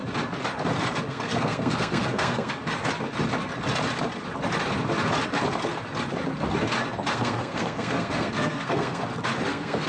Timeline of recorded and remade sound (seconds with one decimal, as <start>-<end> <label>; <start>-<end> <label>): 0.0-1.1 recorded; 1.1-2.6 remade; 2.6-7.1 recorded; 7.1-9.0 remade; 9.0-9.5 recorded; 9.5-9.9 remade

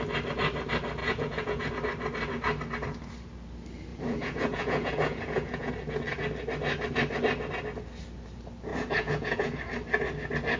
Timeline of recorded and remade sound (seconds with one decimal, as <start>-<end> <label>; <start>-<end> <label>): 0.0-1.0 recorded; 1.0-1.7 remade; 1.7-3.9 recorded; 3.9-5.7 remade; 5.7-8.7 recorded; 8.7-9.6 remade; 9.6-10.6 recorded

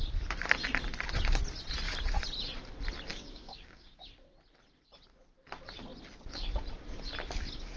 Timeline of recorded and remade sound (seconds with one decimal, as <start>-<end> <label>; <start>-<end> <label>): 0.0-3.1 recorded; 3.1-4.0 remade; 4.0-7.8 recorded

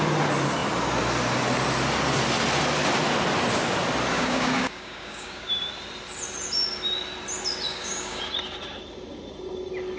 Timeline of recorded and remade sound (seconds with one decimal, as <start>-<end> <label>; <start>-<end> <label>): 0.0-4.1 recorded; 4.1-5.5 remade; 5.5-7.7 recorded; 7.7-8.2 remade; 8.2-10.0 recorded

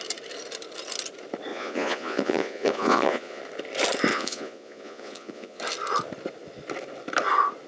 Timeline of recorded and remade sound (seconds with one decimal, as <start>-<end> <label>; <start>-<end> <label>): 0.0-1.5 recorded; 1.5-3.4 remade; 3.4-4.1 recorded; 4.1-5.6 remade; 5.6-7.7 recorded

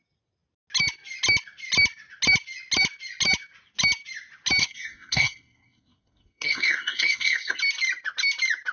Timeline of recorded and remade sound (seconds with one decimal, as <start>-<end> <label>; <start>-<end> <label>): 0.0-4.6 recorded; 4.6-7.6 remade; 7.6-8.7 recorded